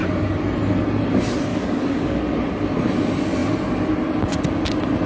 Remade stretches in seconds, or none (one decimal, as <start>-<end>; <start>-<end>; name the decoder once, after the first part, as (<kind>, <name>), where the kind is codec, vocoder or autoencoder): 1.5-2.2 (codec, DAC)